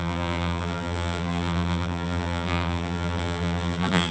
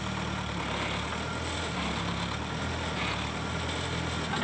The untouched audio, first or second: second